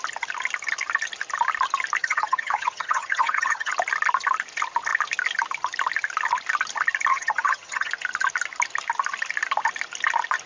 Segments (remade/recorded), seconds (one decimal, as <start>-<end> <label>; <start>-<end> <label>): 0.0-2.0 recorded; 2.0-3.7 remade; 3.7-7.1 recorded; 7.1-7.9 remade; 7.9-10.5 recorded